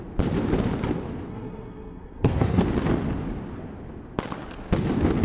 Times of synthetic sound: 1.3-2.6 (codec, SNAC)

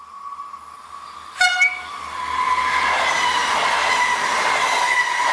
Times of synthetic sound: none

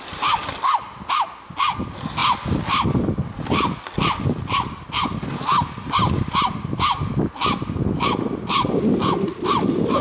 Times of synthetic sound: none

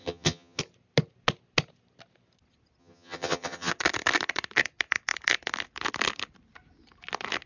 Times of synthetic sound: 0.0-0.6 (vocoder, HiFi-GAN); 2.8-3.7

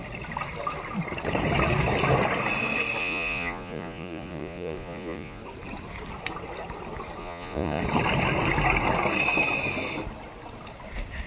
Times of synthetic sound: 3.0-5.4 (vocoder, Vocos); 7.2-7.8

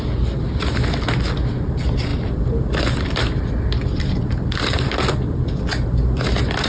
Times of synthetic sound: 2.1-5.6 (vocoder, BigVGAN v2)

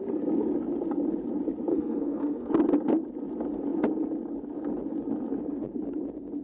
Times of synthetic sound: 1.7-2.5 (codec, SNAC)